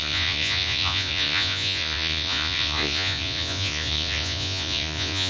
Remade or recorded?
remade